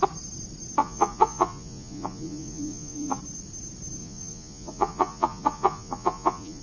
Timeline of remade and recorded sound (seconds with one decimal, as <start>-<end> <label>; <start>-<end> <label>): 0.0-0.8 recorded; 0.8-3.2 remade; 3.2-4.0 recorded; 4.0-6.6 remade